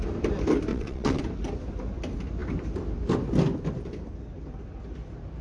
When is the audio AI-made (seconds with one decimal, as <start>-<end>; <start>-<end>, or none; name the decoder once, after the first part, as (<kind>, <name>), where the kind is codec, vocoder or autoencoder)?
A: 0.7-1.2 (vocoder, WaveNeXt)